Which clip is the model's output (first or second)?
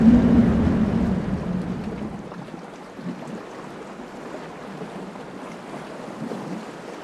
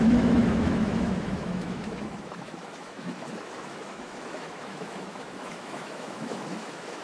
second